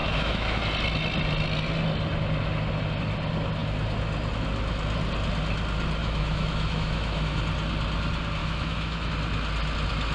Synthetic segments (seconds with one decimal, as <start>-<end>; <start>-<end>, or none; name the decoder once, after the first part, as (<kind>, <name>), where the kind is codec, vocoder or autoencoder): 0.0-0.6 (autoencoder, DAC-VAE); 6.0-7.4; 8.4-9.1

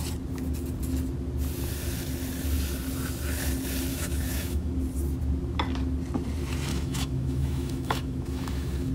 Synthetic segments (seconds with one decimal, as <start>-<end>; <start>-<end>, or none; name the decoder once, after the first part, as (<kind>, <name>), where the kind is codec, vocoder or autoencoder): 3.9-4.7 (autoencoder, DAC-VAE); 6.7-8.9

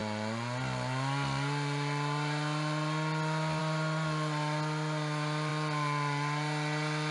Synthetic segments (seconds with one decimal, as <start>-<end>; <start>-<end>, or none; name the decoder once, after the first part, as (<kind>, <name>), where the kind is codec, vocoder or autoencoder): none

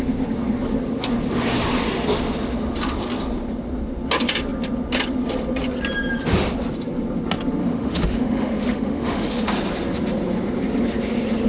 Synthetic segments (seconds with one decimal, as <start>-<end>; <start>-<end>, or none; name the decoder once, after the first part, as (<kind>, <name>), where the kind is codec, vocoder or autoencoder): 7.6-9.5 (autoencoder, DAC-VAE)

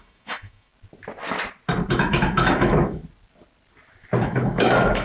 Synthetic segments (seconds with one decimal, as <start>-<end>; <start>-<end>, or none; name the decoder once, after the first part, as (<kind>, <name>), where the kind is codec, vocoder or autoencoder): 0.0-0.7 (autoencoder, DAC-VAE); 1.9-3.0; 4.2-5.0

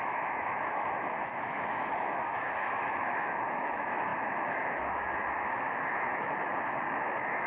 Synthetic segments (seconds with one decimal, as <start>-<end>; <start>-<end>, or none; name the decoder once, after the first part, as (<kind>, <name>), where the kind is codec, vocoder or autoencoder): 0.0-7.5 (autoencoder, DAC-VAE)

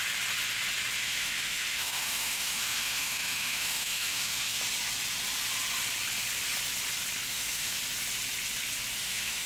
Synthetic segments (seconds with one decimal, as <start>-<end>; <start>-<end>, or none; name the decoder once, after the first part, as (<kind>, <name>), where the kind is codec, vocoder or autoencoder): 1.0-4.6 (autoencoder, DAC-VAE); 7.3-7.8; 9.0-9.5